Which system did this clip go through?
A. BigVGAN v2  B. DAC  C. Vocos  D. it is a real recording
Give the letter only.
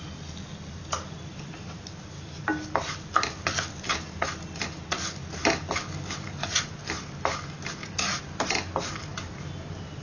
D